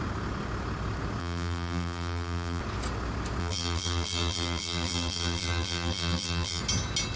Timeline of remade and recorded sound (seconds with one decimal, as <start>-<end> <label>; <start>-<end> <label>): 0.0-1.2 recorded; 1.2-2.6 remade; 2.6-3.4 recorded; 3.4-6.6 remade; 6.6-7.2 recorded